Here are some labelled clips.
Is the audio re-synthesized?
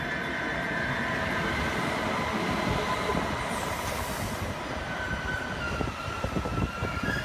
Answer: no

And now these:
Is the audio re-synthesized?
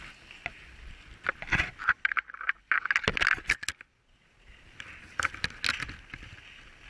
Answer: no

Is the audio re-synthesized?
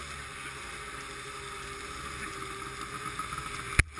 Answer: no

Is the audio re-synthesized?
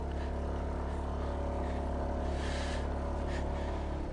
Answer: no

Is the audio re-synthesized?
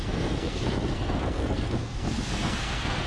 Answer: yes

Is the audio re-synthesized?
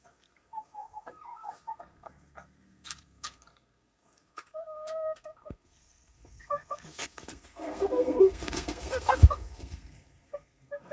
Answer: yes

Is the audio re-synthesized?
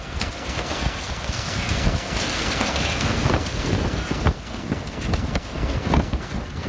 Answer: yes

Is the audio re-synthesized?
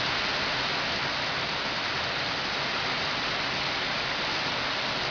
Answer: no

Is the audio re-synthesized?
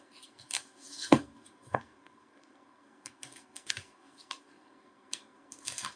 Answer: yes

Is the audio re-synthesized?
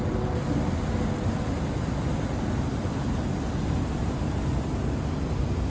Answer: no